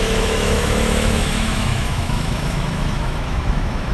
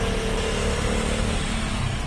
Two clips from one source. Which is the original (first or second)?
second